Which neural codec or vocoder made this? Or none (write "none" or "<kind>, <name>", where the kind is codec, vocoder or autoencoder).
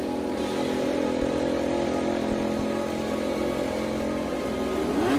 none